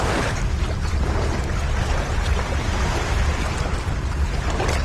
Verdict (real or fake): real